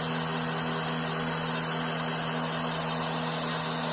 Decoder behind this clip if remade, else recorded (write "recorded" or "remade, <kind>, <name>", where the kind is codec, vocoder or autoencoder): recorded